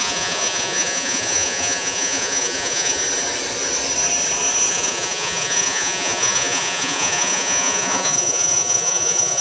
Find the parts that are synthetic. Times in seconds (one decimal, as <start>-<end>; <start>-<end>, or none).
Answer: 0.0-3.0; 4.7-9.4

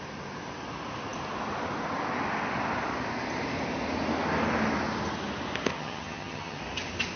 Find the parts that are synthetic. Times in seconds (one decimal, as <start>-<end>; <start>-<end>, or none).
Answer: 5.7-6.6

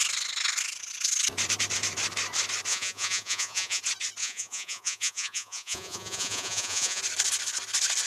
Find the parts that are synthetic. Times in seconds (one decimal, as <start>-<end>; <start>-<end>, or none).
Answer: 2.7-3.8; 4.2-7.0

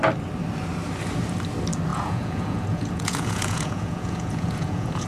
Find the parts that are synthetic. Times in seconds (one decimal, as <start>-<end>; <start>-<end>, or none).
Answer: 1.9-5.1

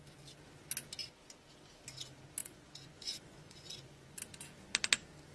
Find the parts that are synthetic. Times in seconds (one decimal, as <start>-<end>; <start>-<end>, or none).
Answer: 2.4-4.2

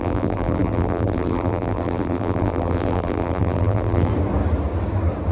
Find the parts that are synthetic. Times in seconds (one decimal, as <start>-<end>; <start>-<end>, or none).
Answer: 0.0-4.1